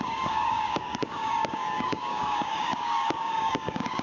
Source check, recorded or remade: remade